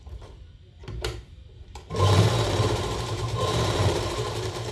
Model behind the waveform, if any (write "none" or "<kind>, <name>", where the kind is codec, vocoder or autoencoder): vocoder, BigVGAN v2